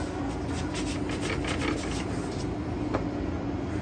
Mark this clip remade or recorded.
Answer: recorded